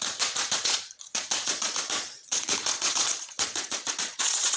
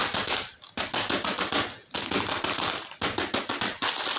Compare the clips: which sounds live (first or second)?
second